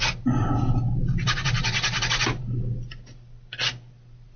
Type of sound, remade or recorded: recorded